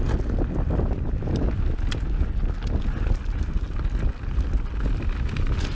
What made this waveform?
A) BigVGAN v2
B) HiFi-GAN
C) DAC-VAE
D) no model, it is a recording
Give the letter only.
D